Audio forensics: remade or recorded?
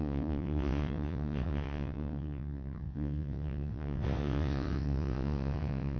remade